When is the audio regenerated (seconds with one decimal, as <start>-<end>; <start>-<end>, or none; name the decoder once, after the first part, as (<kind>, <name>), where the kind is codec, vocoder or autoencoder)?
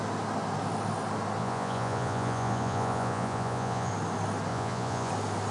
1.4-3.9 (vocoder, Vocos); 4.5-5.1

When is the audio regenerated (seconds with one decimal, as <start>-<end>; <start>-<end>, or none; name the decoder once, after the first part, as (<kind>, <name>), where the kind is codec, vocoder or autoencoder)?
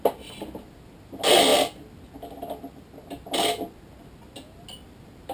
none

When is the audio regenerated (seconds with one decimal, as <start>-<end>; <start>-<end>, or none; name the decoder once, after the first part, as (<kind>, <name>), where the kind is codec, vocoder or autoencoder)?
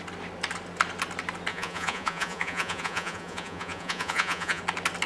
1.5-4.6 (vocoder, Vocos)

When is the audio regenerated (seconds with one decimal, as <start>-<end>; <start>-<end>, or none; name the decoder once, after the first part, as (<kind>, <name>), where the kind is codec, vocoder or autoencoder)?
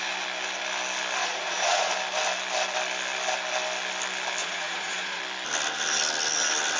1.2-1.9 (vocoder, Vocos); 4.4-5.2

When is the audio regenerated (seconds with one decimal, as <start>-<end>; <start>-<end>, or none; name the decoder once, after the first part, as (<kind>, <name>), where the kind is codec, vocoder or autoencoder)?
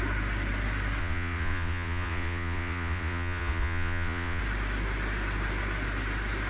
1.0-4.4 (vocoder, Vocos)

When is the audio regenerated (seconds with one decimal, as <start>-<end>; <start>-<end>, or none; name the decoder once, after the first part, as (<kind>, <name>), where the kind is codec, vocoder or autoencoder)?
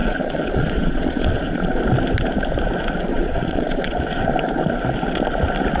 0.0-1.8 (vocoder, Vocos); 3.1-4.0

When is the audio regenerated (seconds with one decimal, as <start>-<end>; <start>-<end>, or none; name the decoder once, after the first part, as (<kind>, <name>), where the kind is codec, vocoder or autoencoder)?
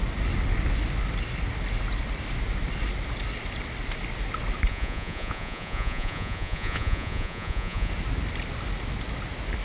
4.7-7.9 (vocoder, Vocos)